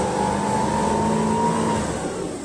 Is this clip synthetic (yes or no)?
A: no